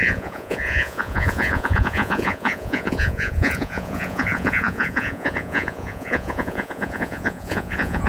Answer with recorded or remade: remade